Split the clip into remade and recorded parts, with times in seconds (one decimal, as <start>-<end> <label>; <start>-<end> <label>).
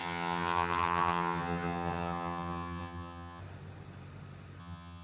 0.0-3.4 remade; 3.4-4.6 recorded; 4.6-5.0 remade